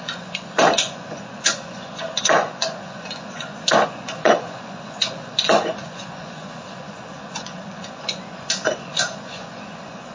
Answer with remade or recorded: remade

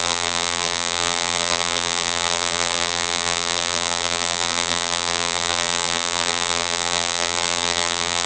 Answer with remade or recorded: remade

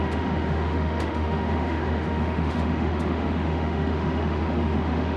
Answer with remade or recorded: remade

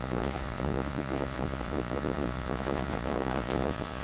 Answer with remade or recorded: remade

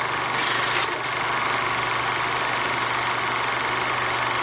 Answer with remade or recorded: recorded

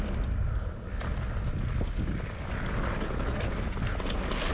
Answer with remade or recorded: recorded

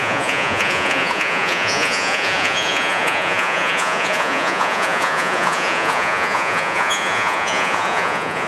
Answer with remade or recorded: remade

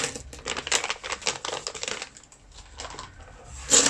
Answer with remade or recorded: recorded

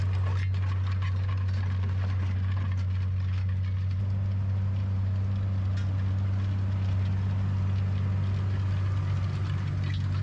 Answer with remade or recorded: recorded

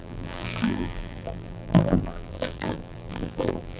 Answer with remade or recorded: remade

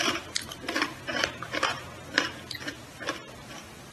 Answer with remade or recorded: remade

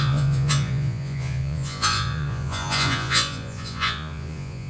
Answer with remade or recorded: remade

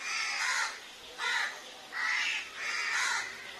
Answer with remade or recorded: recorded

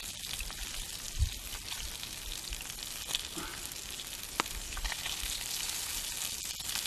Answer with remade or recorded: recorded